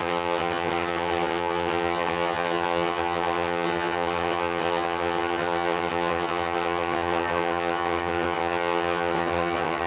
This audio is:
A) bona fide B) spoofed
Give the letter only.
B